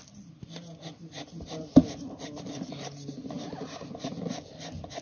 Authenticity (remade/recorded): recorded